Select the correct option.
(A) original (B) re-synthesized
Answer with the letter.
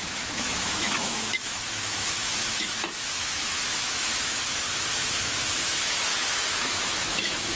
B